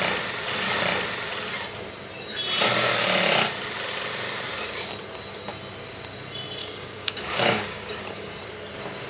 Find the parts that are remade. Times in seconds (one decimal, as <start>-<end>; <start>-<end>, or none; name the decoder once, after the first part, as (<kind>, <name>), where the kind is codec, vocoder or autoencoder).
6.6-8.4 (codec, DAC)